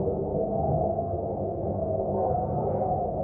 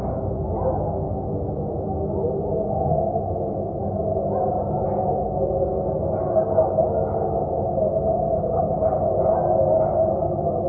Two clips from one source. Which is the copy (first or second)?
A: first